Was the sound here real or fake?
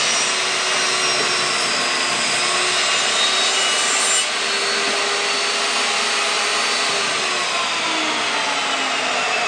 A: real